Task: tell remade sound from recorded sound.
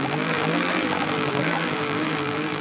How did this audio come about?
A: remade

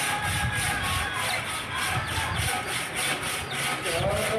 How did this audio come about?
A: recorded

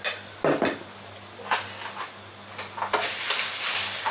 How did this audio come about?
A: recorded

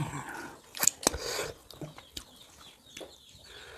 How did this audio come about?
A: recorded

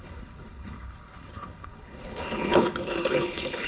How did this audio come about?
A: remade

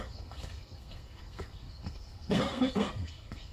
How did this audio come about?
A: remade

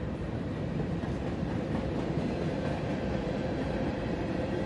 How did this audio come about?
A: remade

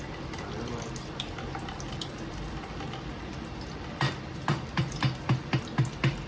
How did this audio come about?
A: remade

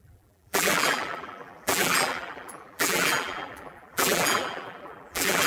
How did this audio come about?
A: remade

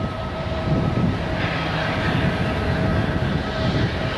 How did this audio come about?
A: remade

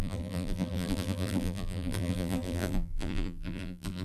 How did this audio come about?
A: remade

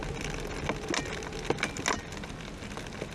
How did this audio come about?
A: recorded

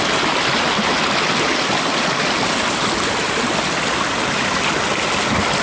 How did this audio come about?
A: recorded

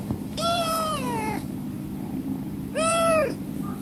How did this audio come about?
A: remade